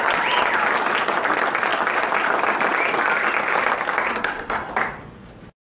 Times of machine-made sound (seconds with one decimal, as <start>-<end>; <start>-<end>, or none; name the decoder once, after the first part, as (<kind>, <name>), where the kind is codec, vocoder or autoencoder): 4.1-4.7 (codec, SNAC)